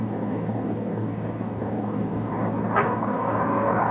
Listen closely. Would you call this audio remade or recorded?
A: remade